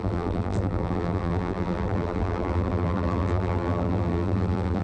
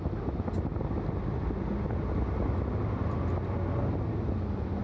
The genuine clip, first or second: second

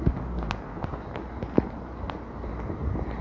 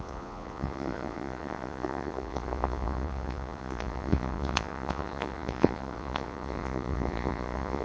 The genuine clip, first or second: first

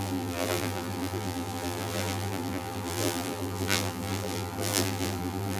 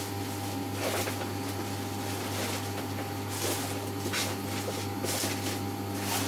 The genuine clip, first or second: second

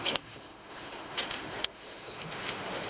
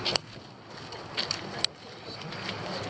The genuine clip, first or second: second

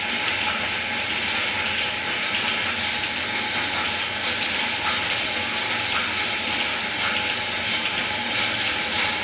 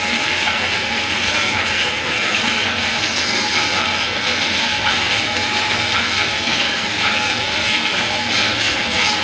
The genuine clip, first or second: first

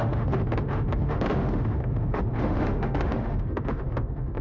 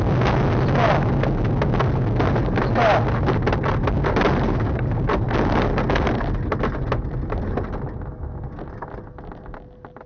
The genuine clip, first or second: second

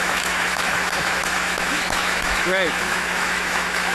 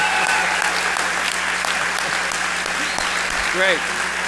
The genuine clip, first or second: second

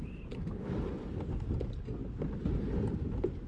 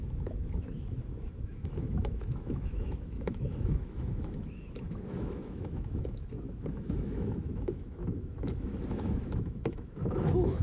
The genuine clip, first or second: first